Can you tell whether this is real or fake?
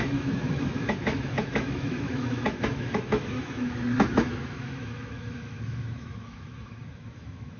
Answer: fake